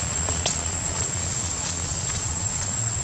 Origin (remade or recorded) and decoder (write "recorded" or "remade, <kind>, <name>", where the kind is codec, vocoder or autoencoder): remade, vocoder, Vocos